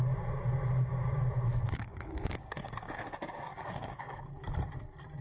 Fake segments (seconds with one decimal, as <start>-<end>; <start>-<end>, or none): 1.5-4.2

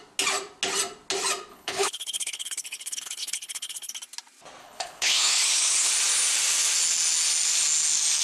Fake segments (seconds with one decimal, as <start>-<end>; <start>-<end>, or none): 1.5-3.9; 4.6-5.9

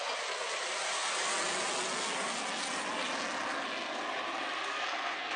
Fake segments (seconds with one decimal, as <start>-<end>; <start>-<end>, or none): 4.6-5.4

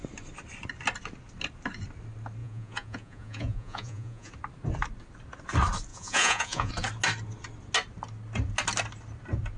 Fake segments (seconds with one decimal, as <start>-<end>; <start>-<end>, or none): 2.4-4.3; 5.9-6.7